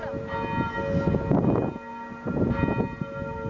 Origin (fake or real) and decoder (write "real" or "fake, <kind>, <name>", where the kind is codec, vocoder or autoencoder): real